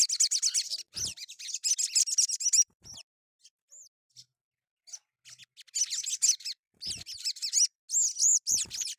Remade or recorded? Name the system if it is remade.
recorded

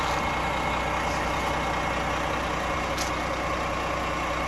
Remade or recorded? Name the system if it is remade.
recorded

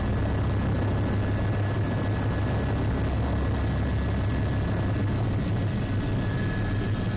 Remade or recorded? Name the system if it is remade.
recorded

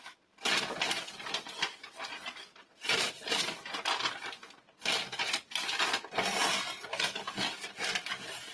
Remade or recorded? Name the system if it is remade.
recorded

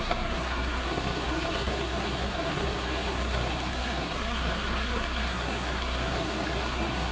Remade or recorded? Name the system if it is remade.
remade, codec, SNAC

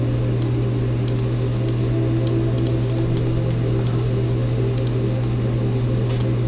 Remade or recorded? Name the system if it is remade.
recorded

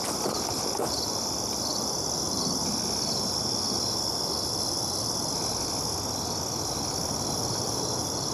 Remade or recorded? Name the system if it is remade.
recorded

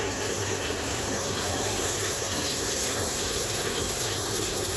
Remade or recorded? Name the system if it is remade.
remade, codec, SNAC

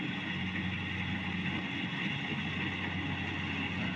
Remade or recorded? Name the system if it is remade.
recorded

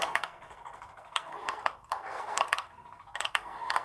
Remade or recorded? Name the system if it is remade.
remade, codec, SNAC